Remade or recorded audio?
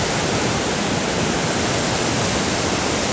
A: recorded